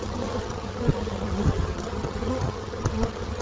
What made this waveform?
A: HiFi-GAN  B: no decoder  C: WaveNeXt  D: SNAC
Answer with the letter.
A